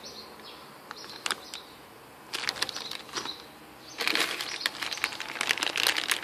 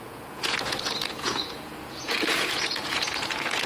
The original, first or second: first